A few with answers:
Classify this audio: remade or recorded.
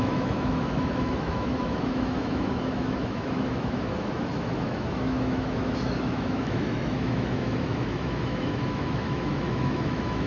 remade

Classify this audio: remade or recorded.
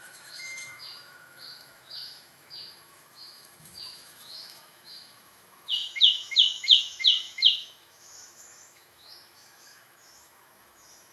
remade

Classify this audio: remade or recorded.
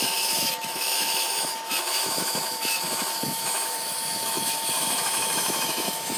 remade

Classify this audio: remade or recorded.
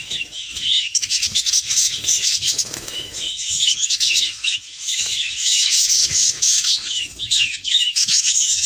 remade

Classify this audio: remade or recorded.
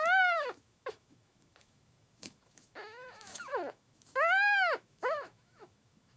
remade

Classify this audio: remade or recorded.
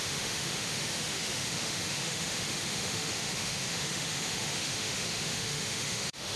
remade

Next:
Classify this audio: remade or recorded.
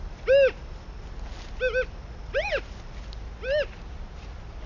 recorded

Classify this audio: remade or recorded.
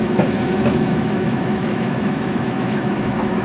remade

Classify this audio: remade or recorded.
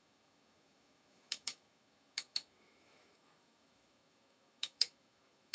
remade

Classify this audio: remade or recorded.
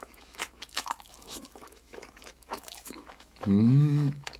remade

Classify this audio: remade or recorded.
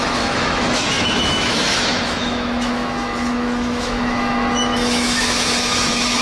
remade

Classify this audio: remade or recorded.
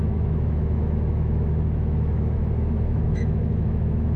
remade